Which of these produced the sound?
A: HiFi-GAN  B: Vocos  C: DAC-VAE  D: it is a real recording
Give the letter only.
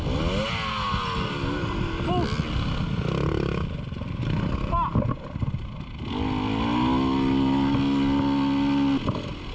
D